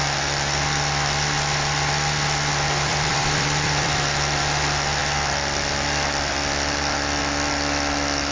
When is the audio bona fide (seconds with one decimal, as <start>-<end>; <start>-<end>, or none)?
0.0-2.9; 4.0-8.3

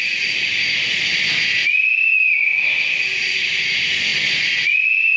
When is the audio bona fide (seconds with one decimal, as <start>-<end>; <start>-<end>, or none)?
0.0-5.2

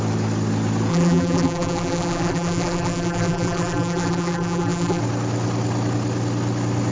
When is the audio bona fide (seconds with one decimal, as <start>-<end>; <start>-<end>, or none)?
0.0-0.9; 5.0-6.9

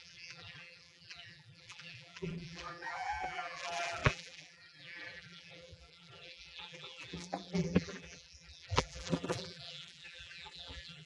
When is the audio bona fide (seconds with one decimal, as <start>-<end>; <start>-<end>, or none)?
none

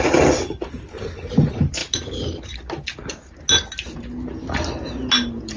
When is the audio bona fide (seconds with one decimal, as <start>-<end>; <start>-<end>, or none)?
0.0-5.6

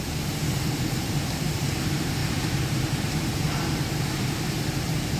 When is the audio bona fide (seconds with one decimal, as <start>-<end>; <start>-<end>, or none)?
none

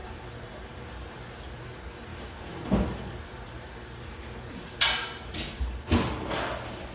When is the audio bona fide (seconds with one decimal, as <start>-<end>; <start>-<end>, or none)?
1.3-2.1; 5.9-6.9

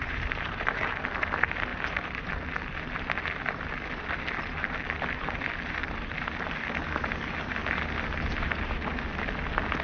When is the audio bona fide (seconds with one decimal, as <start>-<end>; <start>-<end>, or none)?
1.0-1.7; 2.3-9.8